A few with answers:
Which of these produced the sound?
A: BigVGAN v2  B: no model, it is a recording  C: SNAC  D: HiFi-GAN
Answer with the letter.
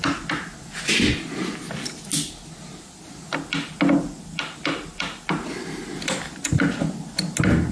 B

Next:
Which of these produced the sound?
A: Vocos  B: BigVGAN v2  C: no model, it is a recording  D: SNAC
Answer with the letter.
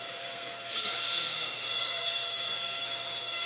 D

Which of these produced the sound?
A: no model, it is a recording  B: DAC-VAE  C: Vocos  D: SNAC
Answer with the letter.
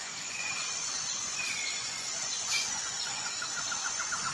C